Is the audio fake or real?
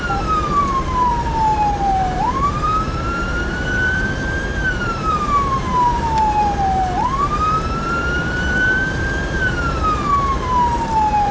fake